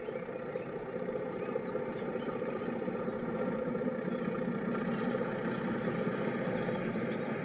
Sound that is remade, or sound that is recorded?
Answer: recorded